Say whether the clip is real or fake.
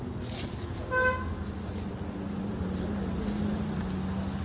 real